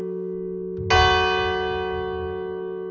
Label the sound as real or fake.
real